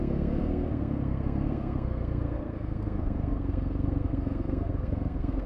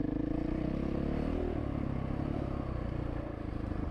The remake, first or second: first